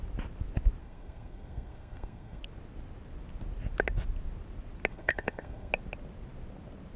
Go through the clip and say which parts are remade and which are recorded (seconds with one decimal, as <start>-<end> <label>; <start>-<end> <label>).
0.0-0.8 recorded; 0.8-2.4 remade; 2.4-4.9 recorded; 4.9-5.7 remade; 5.7-7.0 recorded